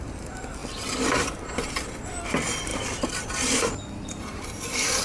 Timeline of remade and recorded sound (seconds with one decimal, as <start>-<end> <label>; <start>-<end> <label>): 0.0-0.6 recorded; 0.6-1.4 remade; 1.4-2.7 recorded; 2.7-3.7 remade; 3.7-5.0 recorded